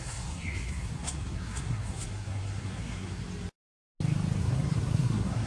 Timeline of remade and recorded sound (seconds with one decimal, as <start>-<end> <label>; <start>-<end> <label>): 0.0-3.2 remade; 3.2-4.4 recorded; 4.4-5.5 remade